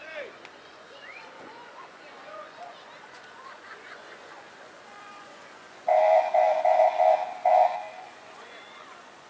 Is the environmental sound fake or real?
fake